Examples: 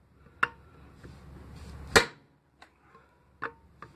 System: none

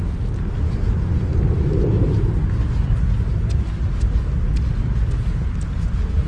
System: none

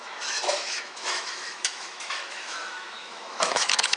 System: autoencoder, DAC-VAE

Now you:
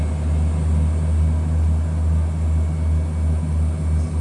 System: none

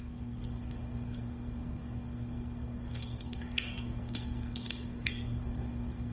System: codec, SNAC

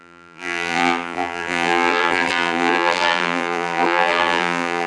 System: vocoder, BigVGAN v2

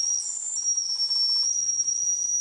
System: none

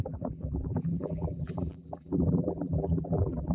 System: vocoder, BigVGAN v2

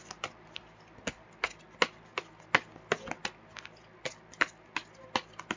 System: none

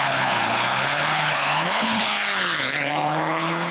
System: codec, HILCodec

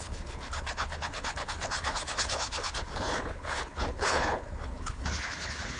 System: codec, HILCodec